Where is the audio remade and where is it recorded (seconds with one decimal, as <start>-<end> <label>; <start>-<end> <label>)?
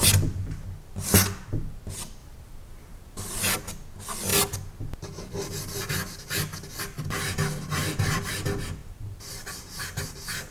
0.0-2.2 recorded; 2.2-3.4 remade; 3.4-8.8 recorded; 8.8-10.5 remade